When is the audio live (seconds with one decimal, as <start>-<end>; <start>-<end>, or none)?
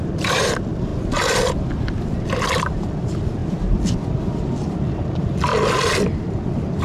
0.9-2.0; 5.5-6.8